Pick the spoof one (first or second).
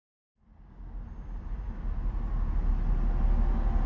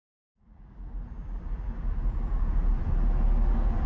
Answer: second